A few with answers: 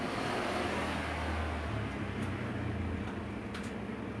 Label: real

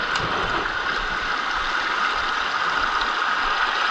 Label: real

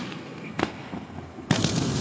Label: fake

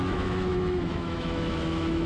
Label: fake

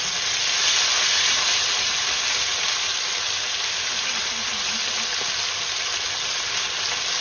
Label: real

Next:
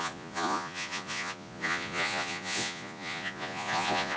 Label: fake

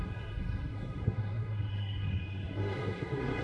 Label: fake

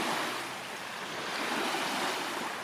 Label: real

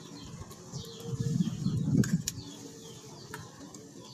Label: real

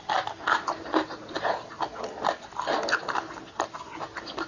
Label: real